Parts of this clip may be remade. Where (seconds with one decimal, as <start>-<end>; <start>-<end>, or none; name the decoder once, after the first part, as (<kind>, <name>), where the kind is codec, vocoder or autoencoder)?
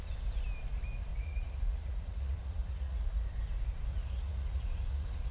1.1-3.2 (vocoder, Vocos); 3.9-5.3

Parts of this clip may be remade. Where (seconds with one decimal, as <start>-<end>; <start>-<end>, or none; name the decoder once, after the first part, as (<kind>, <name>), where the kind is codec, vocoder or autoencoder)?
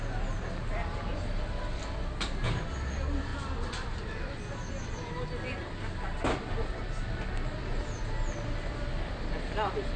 none